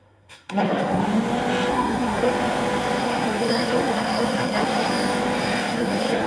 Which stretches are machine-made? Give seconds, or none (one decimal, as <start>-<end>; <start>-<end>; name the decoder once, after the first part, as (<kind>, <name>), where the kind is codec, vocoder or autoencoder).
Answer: 0.0-1.0 (codec, SNAC); 1.7-2.3; 3.0-4.9; 5.6-6.3